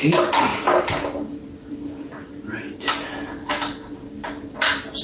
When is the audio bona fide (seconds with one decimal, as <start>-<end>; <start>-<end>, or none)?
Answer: 0.0-5.0